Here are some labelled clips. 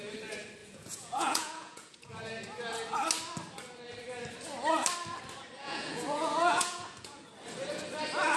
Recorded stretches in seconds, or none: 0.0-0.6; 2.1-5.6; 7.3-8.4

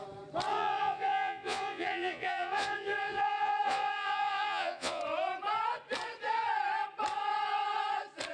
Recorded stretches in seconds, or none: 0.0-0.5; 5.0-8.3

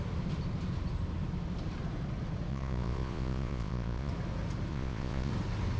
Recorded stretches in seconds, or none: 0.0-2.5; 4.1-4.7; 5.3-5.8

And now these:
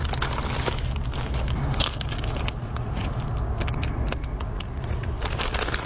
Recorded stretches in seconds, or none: 0.0-2.6; 3.2-4.3; 5.1-5.9